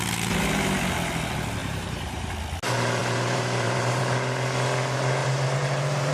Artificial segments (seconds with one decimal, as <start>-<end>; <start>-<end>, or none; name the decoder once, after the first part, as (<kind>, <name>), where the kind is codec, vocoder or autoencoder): 1.6-2.3 (vocoder, BigVGAN v2); 3.0-4.0; 5.2-6.1